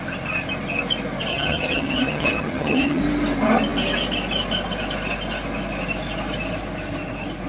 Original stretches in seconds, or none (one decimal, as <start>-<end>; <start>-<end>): 0.0-1.3; 3.0-7.5